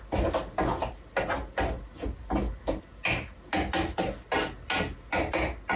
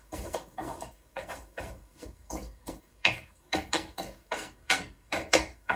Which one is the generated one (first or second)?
second